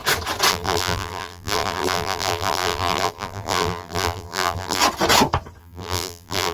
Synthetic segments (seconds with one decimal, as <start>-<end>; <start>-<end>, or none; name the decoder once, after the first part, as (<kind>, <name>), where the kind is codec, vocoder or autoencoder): 0.5-4.8 (vocoder, BigVGAN v2); 5.6-6.5